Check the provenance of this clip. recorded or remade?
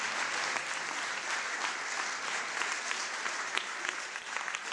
remade